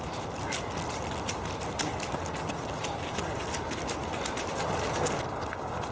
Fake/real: real